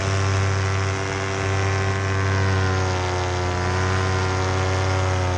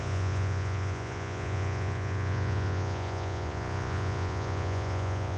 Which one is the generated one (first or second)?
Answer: second